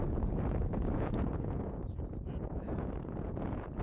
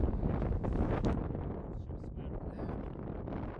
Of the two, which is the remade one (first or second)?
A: first